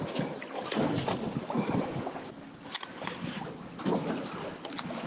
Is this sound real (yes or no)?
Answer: yes